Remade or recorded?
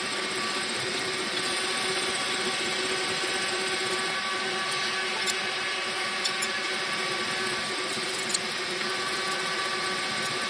recorded